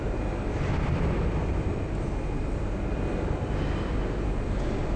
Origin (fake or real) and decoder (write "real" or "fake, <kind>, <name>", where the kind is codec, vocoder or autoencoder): fake, vocoder, BigVGAN v2